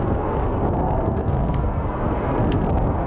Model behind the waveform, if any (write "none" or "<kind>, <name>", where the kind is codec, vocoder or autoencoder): codec, SNAC